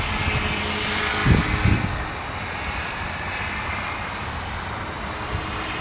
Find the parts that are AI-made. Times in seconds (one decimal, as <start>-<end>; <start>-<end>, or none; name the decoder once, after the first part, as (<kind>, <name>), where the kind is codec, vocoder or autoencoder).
none